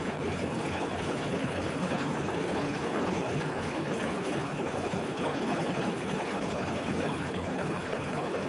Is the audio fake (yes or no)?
yes